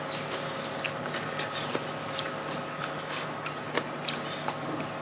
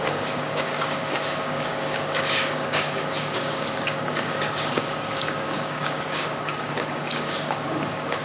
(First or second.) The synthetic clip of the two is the second